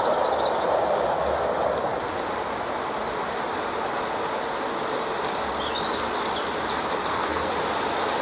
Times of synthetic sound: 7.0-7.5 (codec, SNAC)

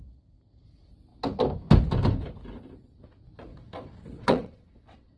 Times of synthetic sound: 3.5-5.2 (vocoder, WaveNeXt)

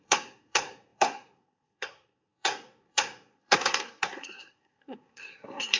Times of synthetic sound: 0.0-5.8 (codec, SNAC)

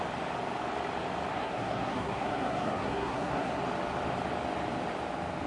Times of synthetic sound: 1.3-3.6 (codec, SNAC)